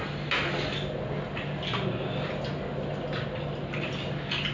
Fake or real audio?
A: real